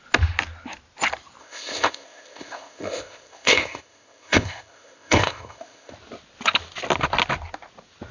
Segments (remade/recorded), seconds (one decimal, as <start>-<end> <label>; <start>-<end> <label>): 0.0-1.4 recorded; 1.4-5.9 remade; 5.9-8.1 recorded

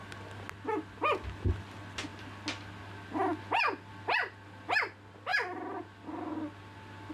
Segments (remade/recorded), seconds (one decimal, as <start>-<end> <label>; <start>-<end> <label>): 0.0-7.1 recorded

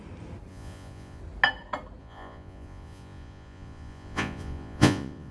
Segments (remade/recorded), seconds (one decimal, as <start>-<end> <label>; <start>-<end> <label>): 0.0-0.5 recorded; 0.5-1.2 remade; 1.2-2.0 recorded; 2.0-5.3 remade

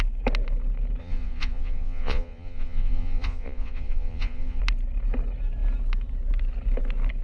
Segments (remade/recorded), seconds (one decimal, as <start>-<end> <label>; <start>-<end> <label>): 0.0-1.0 recorded; 1.0-4.6 remade; 4.6-7.2 recorded